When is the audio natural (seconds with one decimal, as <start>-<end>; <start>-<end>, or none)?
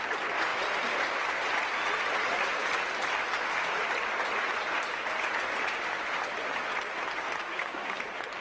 0.0-7.4; 8.0-8.4